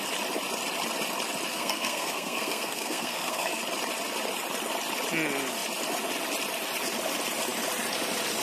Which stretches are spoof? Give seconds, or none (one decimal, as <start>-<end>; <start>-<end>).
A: 1.5-3.6